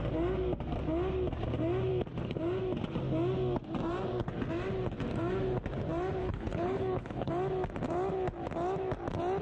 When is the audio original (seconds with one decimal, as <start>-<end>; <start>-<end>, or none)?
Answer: 0.0-6.2; 7.3-9.4